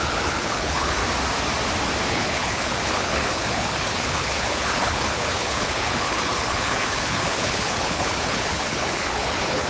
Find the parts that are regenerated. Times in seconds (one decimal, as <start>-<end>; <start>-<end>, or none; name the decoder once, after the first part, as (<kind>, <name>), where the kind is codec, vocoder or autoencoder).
0.0-1.0 (codec, HILCodec); 2.1-9.7